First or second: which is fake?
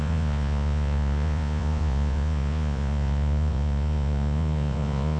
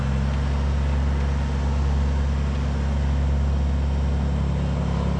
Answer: first